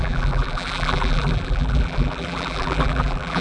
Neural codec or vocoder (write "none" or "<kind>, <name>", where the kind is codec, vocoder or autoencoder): vocoder, BigVGAN v2